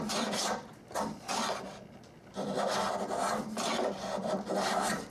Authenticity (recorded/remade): recorded